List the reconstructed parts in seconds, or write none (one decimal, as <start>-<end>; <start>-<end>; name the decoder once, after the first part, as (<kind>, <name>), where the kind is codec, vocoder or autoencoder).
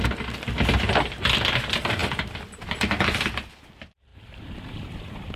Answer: 4.1-5.4 (vocoder, BigVGAN v2)